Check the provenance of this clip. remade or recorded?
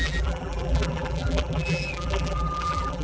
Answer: remade